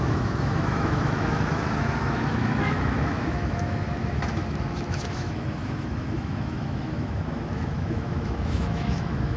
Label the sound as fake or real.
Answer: fake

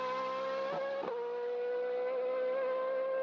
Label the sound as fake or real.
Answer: real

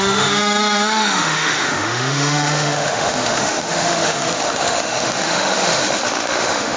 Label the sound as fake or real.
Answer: fake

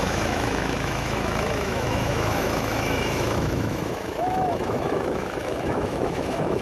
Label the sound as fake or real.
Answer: fake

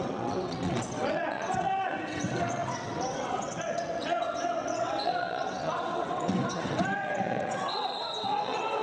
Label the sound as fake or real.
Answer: fake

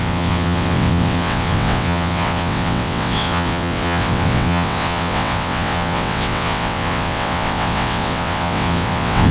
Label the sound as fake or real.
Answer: fake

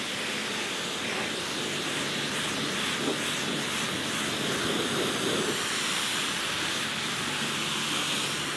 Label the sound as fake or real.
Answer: real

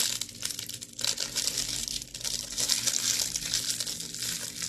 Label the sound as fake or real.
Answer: real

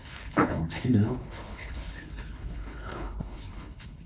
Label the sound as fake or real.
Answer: fake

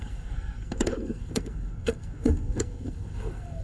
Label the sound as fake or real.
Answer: fake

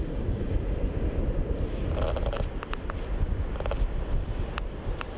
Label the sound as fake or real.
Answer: fake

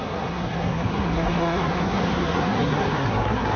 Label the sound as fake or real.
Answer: fake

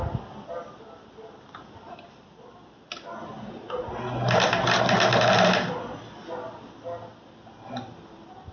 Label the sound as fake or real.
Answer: real